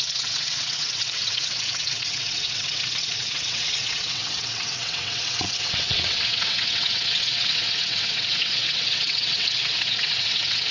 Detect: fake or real fake